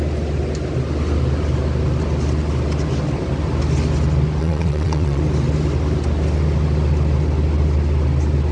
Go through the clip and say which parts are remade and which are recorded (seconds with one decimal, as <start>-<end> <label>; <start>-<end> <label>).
0.0-4.4 recorded; 4.4-5.2 remade; 5.2-8.5 recorded